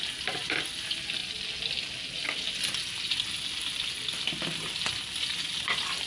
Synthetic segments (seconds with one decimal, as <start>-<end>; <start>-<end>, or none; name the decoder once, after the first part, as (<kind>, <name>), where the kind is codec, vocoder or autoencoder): none